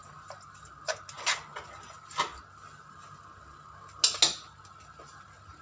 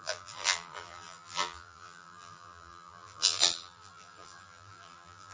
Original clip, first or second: first